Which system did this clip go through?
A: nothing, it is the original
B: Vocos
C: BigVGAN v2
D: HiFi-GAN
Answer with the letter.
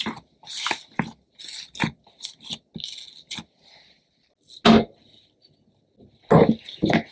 A